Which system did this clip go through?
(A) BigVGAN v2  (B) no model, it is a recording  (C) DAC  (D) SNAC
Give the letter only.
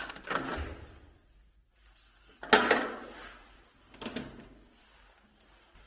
B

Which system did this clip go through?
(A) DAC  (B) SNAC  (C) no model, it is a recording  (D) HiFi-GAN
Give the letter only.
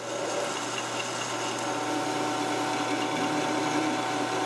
C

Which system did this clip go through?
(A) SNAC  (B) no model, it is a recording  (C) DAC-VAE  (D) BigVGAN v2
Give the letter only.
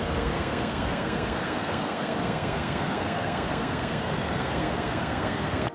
A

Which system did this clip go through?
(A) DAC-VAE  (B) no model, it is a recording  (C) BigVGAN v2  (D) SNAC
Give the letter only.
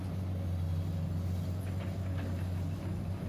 B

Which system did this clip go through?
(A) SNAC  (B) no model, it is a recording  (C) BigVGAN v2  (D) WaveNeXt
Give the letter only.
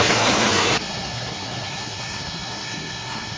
A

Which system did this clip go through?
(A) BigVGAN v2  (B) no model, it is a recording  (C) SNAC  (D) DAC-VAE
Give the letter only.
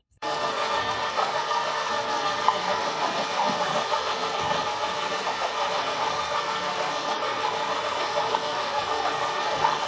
C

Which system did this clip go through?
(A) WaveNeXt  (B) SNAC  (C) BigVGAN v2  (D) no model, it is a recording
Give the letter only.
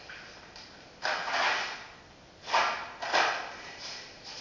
D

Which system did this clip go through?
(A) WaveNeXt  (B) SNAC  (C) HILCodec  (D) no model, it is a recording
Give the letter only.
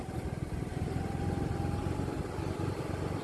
D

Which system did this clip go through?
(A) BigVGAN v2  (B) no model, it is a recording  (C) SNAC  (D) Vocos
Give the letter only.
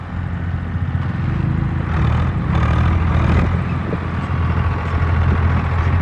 B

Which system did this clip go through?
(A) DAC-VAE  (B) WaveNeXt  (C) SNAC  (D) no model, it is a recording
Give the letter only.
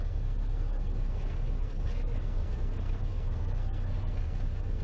C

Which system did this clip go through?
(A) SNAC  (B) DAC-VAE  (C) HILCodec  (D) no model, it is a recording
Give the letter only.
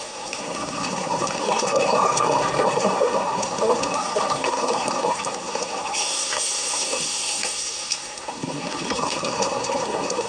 A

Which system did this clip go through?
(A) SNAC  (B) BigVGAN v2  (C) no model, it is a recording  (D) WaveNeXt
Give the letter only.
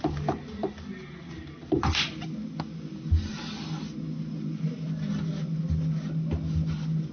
C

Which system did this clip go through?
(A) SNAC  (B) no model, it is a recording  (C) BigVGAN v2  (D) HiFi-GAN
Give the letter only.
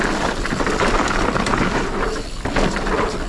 B